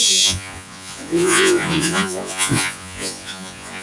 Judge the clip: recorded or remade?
remade